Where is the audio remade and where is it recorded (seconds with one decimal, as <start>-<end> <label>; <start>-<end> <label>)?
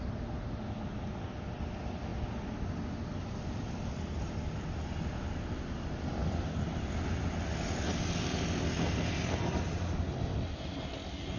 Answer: 0.0-11.4 recorded